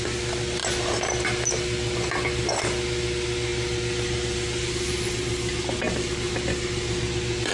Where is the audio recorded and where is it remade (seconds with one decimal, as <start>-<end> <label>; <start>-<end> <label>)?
0.0-7.5 recorded